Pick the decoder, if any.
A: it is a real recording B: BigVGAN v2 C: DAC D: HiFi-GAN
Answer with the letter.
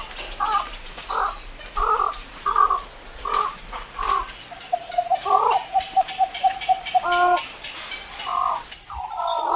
A